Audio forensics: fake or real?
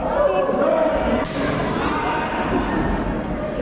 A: real